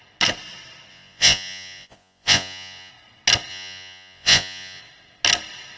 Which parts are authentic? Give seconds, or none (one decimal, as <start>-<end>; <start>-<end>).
0.0-0.9; 2.9-3.5; 4.8-5.8